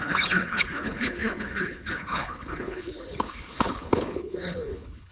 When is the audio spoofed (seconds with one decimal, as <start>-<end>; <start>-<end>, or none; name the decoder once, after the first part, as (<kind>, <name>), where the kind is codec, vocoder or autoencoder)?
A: 0.0-5.1 (codec, HILCodec)